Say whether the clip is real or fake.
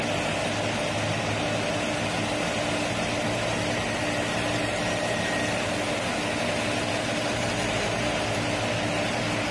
real